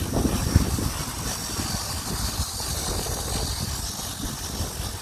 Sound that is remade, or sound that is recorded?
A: recorded